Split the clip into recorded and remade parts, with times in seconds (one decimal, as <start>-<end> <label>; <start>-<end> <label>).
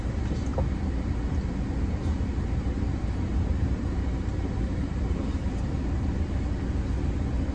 0.0-2.9 recorded; 2.9-6.4 remade; 6.4-7.5 recorded